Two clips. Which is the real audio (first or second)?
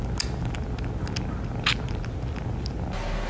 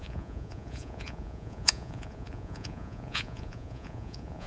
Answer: first